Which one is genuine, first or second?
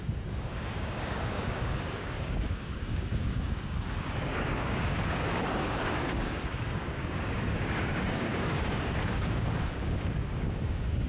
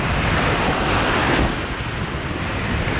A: second